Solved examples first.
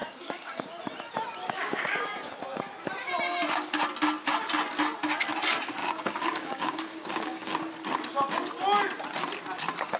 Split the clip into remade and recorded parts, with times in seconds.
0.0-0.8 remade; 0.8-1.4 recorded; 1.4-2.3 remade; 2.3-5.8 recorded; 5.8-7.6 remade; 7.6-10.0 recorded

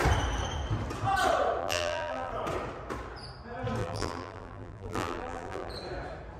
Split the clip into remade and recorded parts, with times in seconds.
0.0-1.6 recorded; 1.6-2.3 remade; 2.3-3.8 recorded; 3.8-5.7 remade; 5.7-6.4 recorded